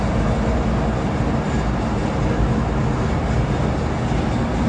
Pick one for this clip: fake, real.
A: real